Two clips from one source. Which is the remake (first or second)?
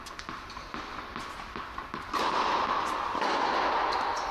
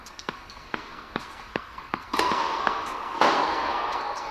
second